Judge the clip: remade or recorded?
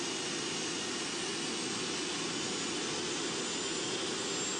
recorded